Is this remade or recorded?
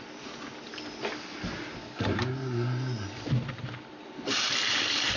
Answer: recorded